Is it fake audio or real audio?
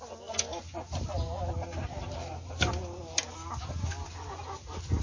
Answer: real